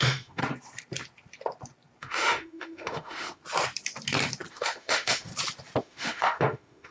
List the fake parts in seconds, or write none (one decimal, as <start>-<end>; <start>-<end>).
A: 0.0-0.4; 2.0-3.4; 4.5-5.3; 5.8-6.9